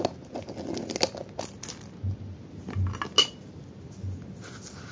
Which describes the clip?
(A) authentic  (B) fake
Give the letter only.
A